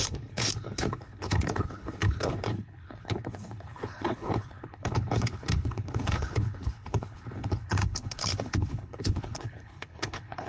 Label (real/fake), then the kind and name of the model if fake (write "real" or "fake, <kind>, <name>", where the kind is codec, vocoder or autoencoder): fake, codec, HILCodec